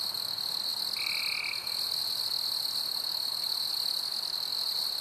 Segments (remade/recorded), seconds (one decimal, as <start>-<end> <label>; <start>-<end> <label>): 0.0-5.0 recorded